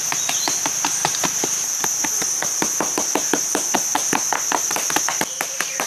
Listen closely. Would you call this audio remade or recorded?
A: recorded